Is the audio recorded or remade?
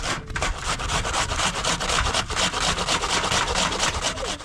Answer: recorded